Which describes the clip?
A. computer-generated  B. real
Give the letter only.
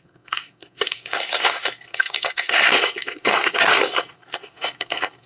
A